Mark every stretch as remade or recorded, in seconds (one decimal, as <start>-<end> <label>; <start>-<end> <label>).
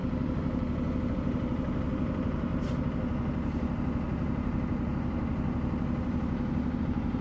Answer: 0.0-1.1 recorded; 1.1-2.5 remade; 2.5-6.8 recorded; 6.8-7.2 remade